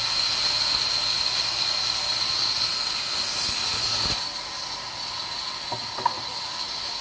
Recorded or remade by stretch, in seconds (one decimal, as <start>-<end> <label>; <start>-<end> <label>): 0.0-7.0 recorded